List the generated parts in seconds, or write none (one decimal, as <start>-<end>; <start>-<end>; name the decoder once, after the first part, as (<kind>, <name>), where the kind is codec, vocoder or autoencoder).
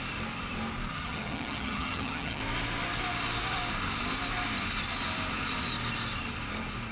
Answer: 0.9-2.4 (vocoder, HiFi-GAN)